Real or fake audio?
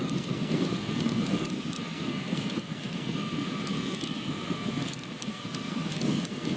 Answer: fake